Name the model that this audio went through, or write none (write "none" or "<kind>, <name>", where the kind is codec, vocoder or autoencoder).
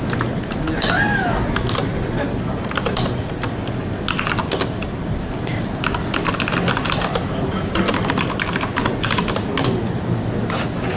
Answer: none